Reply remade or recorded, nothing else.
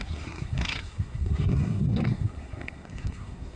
remade